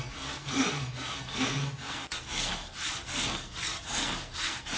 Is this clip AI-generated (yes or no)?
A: yes